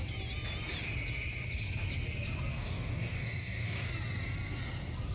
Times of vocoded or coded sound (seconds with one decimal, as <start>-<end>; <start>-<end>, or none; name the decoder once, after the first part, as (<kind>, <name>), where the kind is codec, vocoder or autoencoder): 2.5-3.9 (codec, DAC)